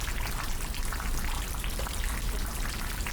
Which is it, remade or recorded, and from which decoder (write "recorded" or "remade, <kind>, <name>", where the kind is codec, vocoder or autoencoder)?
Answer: recorded